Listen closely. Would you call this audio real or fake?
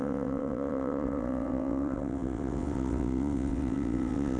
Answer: fake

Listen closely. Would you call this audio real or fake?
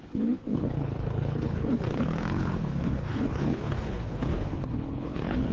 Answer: fake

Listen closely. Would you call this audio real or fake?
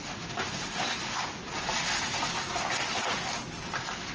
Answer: real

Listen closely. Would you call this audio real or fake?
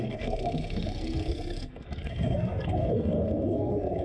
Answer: fake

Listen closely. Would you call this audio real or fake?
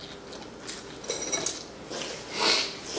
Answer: real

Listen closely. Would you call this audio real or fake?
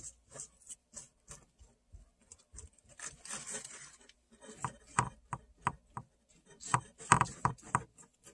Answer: real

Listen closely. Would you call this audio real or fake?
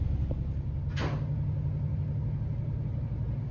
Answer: real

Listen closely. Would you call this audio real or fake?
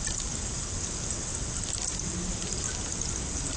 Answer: real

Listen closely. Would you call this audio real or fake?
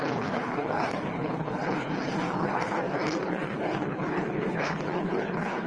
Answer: fake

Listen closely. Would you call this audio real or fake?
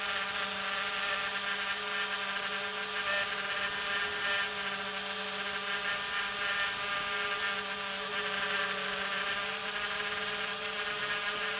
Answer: real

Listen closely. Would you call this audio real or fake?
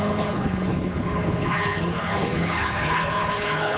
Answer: fake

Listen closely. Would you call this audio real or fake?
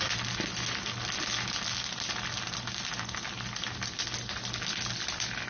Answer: real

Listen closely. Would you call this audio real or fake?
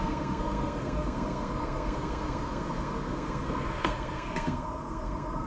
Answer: fake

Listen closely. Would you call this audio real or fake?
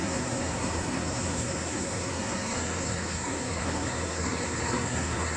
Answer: fake